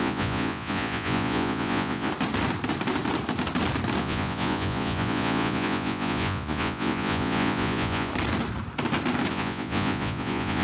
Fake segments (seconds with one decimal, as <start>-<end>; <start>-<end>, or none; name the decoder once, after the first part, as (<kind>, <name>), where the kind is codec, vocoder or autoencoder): 0.0-2.1 (vocoder, Vocos); 4.0-8.1; 9.3-10.6